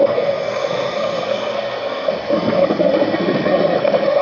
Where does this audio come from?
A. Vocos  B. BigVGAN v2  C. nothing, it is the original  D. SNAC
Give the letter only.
D